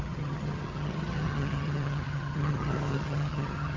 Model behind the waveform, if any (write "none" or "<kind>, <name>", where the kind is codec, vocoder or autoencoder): vocoder, HiFi-GAN